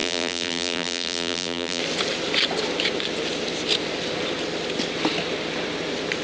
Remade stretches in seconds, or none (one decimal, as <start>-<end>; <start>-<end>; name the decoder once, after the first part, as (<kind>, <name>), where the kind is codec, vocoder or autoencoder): 0.0-1.8 (vocoder, BigVGAN v2)